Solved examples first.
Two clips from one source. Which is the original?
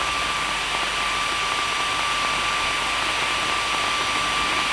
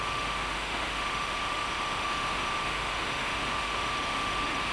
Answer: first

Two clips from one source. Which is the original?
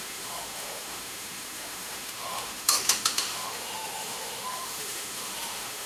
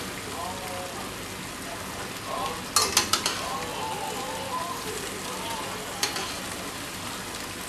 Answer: second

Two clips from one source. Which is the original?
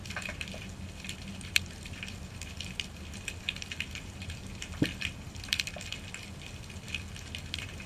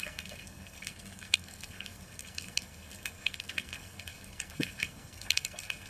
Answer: first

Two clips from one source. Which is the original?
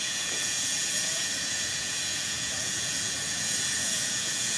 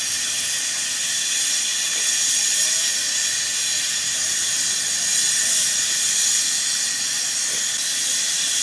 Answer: second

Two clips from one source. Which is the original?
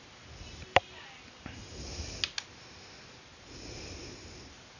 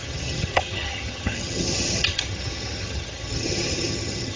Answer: first